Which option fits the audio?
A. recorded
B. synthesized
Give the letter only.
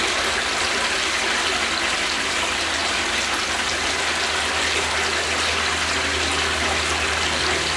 A